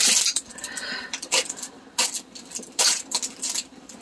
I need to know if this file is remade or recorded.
recorded